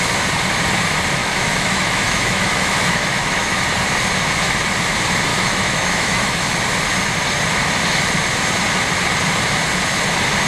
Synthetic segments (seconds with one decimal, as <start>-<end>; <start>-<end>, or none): 1.2-3.6; 5.3-6.4